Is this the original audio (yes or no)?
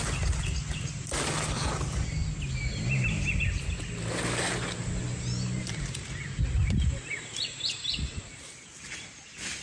yes